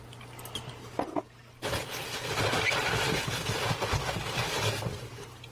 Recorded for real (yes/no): yes